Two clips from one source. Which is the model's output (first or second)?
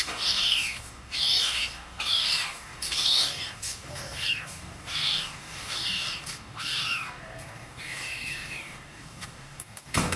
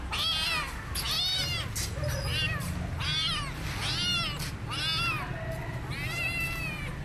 first